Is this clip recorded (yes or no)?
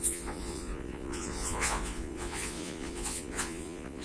no